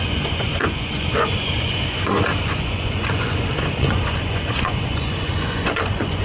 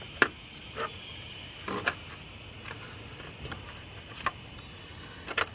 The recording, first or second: second